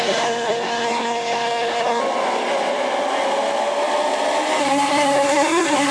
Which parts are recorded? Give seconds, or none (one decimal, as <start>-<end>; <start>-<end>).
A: 2.0-4.6